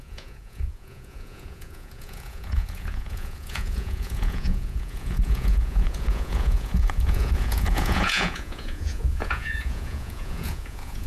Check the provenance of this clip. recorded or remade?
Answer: remade